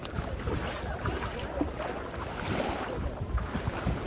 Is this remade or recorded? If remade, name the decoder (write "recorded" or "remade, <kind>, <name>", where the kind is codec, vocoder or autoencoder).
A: remade, vocoder, BigVGAN v2